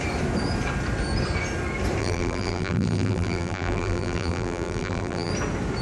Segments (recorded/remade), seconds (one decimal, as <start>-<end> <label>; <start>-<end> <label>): 0.0-2.0 recorded; 2.0-5.3 remade; 5.3-5.8 recorded